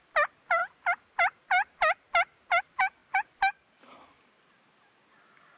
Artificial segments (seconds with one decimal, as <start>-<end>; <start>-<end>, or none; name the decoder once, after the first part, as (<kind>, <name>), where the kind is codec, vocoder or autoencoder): none